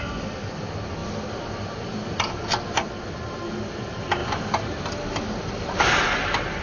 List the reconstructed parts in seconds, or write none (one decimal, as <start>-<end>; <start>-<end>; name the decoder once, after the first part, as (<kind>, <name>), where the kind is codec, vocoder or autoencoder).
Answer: none